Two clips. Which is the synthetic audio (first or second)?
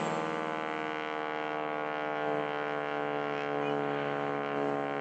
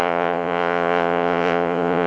second